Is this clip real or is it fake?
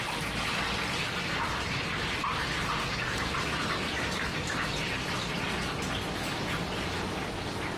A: real